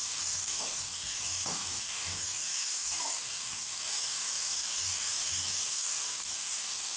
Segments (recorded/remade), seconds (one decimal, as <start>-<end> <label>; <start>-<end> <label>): 0.0-7.0 remade